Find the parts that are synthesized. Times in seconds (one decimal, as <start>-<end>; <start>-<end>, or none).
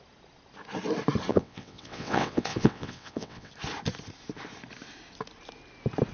1.3-3.5